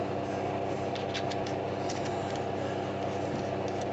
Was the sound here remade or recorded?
recorded